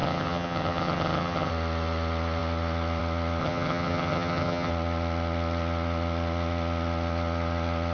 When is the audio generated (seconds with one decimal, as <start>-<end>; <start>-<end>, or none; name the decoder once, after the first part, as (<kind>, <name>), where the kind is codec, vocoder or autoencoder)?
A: 0.0-1.5 (vocoder, HiFi-GAN); 3.4-4.7